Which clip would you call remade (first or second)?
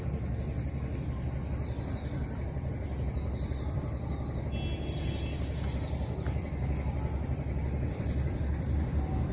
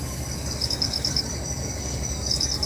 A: second